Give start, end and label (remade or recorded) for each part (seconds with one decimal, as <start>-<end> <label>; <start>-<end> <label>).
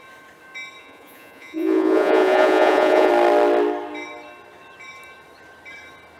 0.0-0.8 recorded; 0.8-3.1 remade; 3.1-6.2 recorded